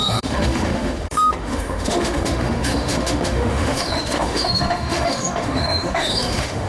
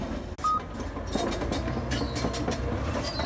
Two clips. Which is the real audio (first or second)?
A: second